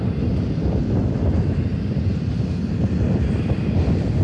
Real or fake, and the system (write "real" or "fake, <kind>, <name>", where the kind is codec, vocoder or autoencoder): real